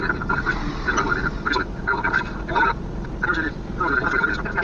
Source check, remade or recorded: recorded